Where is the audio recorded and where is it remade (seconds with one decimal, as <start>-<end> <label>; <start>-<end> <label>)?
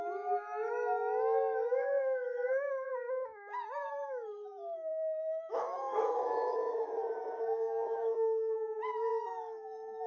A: 0.0-10.1 remade